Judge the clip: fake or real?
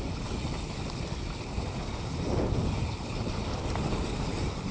real